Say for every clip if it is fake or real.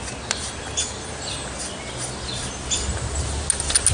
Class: real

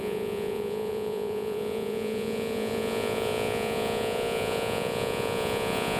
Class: fake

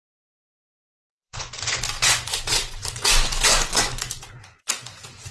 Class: fake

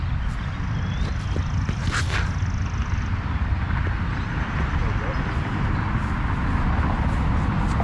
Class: real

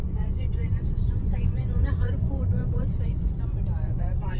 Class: fake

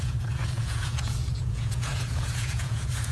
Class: fake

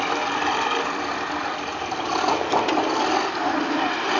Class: real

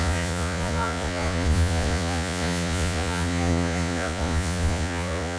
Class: fake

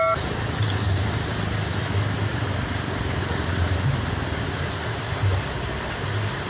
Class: real